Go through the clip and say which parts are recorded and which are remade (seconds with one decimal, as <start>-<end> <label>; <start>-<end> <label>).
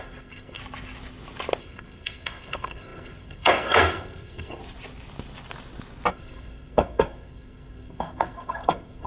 0.0-0.6 remade; 0.6-1.6 recorded; 1.6-4.6 remade; 4.6-6.1 recorded; 6.1-9.1 remade